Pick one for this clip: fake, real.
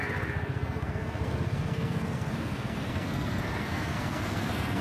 fake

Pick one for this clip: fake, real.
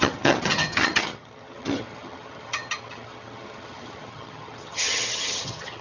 fake